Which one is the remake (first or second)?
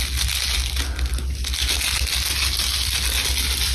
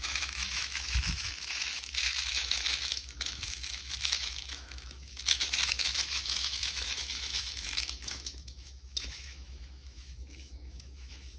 second